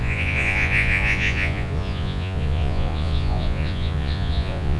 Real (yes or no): no